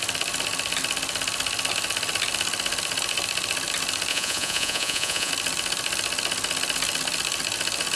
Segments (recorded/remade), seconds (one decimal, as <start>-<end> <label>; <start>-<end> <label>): 0.0-4.1 recorded; 4.1-5.3 remade; 5.3-8.0 recorded